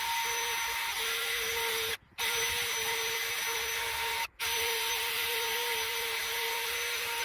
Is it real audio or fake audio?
real